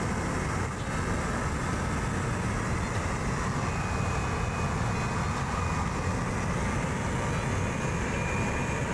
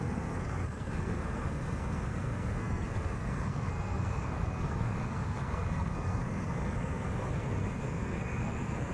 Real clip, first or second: first